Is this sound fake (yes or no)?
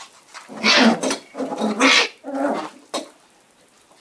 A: no